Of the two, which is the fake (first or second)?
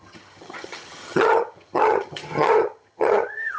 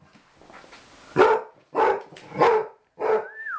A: first